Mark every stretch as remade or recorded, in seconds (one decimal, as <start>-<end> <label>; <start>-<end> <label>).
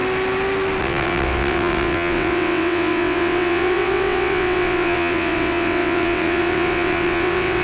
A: 0.0-0.8 recorded; 0.8-7.6 remade